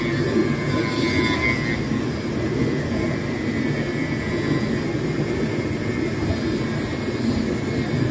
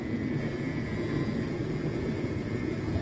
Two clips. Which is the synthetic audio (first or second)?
second